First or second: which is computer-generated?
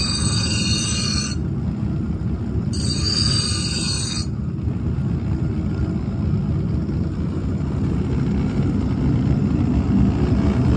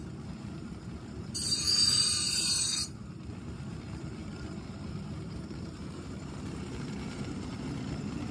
second